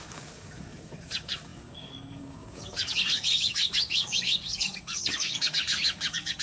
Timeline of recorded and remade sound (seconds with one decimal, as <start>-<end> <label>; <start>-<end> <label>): 0.0-6.4 remade